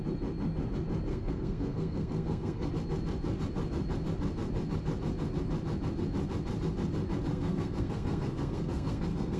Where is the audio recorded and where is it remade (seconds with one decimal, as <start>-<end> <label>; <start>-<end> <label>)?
0.0-1.1 recorded; 1.1-2.7 remade; 2.7-7.3 recorded; 7.3-9.4 remade